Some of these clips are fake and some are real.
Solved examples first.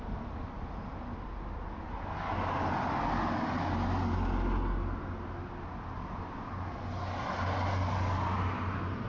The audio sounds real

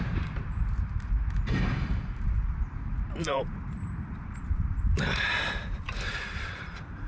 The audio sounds fake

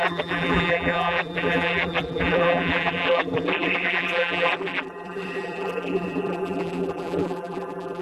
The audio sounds fake